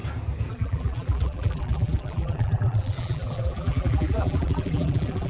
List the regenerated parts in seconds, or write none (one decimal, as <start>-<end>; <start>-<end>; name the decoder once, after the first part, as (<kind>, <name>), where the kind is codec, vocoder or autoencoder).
0.5-5.3 (vocoder, BigVGAN v2)